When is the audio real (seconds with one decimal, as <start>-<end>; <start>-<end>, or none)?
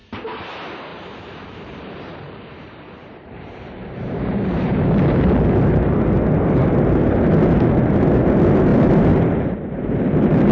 0.0-0.9; 5.3-8.7